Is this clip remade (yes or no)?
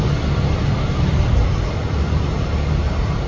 no